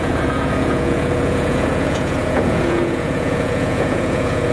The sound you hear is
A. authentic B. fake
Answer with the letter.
B